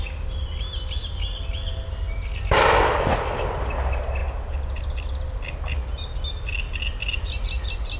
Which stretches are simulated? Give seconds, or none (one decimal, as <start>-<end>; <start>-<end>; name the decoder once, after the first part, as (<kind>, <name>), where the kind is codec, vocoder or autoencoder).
none